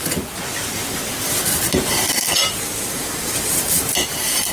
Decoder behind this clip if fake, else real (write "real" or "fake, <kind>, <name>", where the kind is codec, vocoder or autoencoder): real